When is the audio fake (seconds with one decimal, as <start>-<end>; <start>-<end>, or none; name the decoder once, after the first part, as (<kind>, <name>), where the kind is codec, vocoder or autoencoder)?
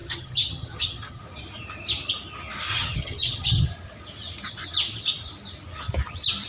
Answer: 0.0-1.2 (vocoder, HiFi-GAN); 2.7-3.7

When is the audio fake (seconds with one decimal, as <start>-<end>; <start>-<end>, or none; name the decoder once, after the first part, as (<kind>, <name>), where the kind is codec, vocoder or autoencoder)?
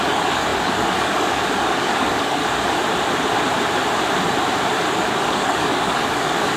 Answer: 0.0-2.4 (codec, DAC); 4.9-6.6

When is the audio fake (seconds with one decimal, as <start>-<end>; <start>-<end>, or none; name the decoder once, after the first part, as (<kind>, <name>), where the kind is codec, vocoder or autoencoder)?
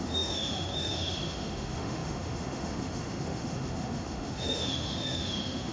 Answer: 0.0-5.7 (autoencoder, DAC-VAE)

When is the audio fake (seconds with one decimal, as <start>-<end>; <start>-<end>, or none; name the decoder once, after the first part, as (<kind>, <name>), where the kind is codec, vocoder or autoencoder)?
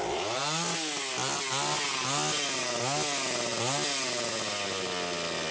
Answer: none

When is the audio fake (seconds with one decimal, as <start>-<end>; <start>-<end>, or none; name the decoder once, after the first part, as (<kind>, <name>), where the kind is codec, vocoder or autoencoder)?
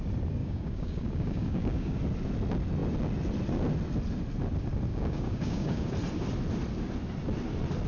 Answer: 0.4-2.0 (codec, DAC); 4.9-5.9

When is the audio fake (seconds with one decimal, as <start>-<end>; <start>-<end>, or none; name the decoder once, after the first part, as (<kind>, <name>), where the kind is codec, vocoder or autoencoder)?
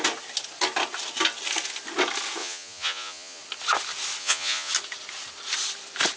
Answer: 2.4-3.4 (vocoder, Vocos); 4.2-4.7